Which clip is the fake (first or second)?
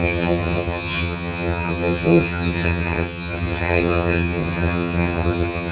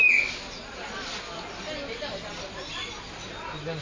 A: first